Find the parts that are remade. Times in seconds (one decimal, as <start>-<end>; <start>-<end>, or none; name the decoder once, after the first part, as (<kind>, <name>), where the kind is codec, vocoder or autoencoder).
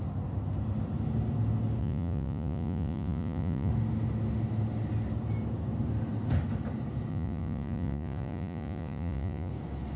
1.8-3.7 (vocoder, Vocos); 7.1-9.5